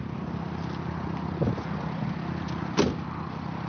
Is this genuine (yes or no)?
yes